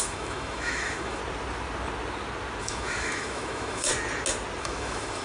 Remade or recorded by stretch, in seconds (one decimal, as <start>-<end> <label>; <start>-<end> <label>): 0.0-1.2 remade; 1.2-2.6 recorded; 2.6-3.9 remade; 3.9-4.6 recorded; 4.6-5.2 remade